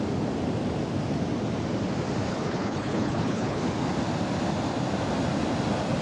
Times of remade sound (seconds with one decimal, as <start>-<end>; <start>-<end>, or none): 2.3-3.6